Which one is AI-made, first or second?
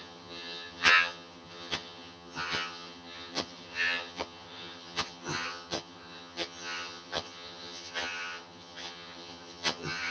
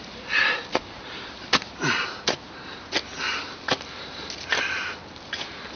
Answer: first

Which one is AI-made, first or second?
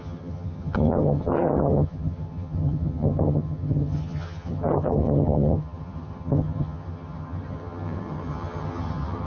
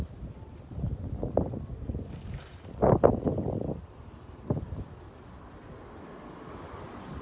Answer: first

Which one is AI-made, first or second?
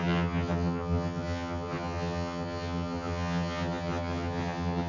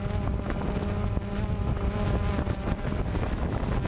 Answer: first